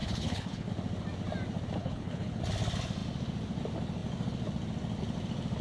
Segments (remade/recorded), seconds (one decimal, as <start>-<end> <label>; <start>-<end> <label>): 0.0-0.7 remade; 0.7-1.8 recorded; 1.8-2.4 remade; 2.4-5.6 recorded